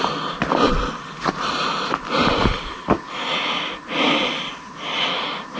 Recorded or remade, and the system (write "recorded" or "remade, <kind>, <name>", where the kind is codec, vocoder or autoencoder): recorded